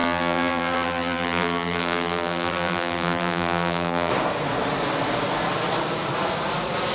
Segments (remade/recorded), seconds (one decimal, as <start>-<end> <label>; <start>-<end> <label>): 0.0-4.1 remade; 4.1-6.9 recorded